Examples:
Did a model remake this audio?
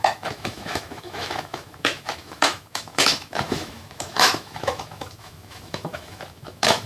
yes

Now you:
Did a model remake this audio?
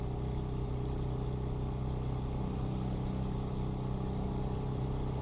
no